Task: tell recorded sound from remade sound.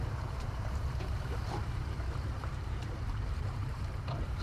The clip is remade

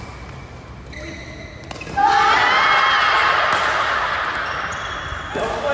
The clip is recorded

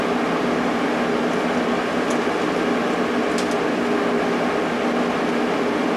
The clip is recorded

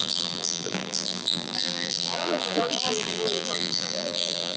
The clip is remade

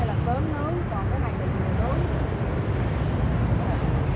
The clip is recorded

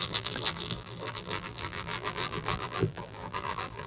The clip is remade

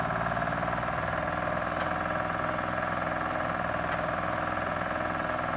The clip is recorded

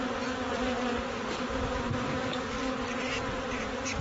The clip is recorded